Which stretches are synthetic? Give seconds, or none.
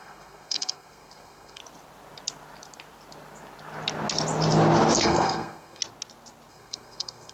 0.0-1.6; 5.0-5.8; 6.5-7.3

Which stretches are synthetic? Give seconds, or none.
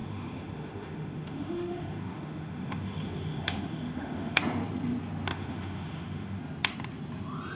0.0-4.4; 5.3-6.4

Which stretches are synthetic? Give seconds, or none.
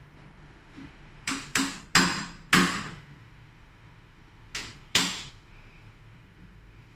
0.0-1.8; 2.5-7.0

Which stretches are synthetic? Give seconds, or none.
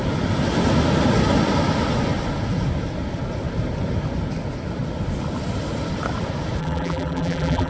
6.6-7.7